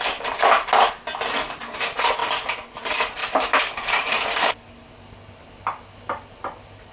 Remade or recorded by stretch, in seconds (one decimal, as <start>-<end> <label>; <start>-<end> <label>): 0.0-6.9 recorded